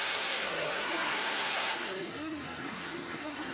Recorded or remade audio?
remade